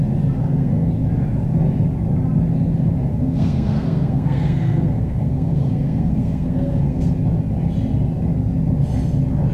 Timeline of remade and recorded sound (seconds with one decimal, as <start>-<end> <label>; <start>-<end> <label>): 0.0-0.4 recorded; 0.4-0.9 remade; 0.9-3.1 recorded; 3.1-7.1 remade; 7.1-9.5 recorded